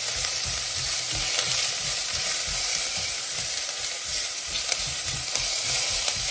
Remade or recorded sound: remade